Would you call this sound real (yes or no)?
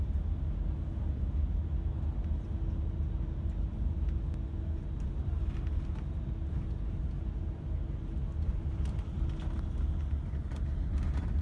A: yes